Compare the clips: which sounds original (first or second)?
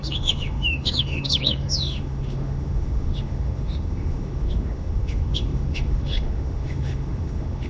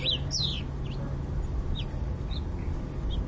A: second